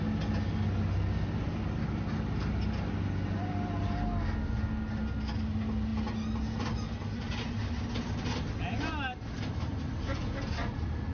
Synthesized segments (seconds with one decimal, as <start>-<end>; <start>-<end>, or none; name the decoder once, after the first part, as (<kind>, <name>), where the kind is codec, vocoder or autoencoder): none